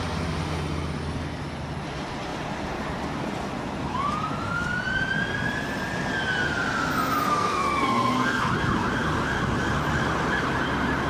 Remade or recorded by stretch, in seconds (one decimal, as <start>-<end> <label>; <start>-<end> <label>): 0.0-7.2 recorded; 7.2-8.5 remade; 8.5-11.1 recorded